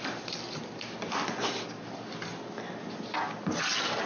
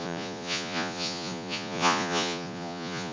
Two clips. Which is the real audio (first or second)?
first